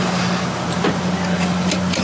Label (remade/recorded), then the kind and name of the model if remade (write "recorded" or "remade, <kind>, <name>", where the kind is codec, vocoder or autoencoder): recorded